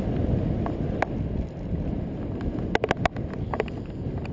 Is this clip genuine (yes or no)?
yes